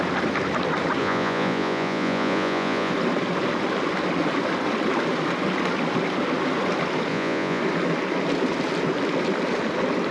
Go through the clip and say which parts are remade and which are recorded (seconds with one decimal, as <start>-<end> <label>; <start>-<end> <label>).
0.0-1.0 recorded; 1.0-2.9 remade; 2.9-7.1 recorded; 7.1-7.6 remade; 7.6-10.1 recorded